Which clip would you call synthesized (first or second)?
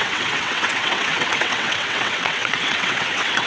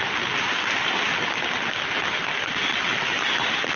first